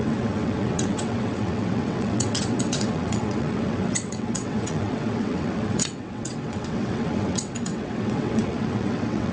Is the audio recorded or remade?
remade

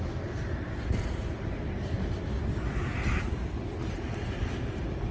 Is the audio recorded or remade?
recorded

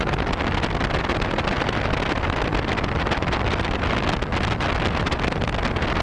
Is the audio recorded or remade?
recorded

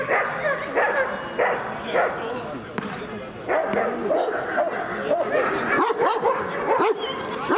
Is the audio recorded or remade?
recorded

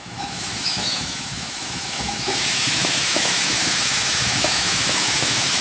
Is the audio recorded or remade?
remade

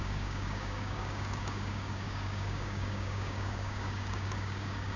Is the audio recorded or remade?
remade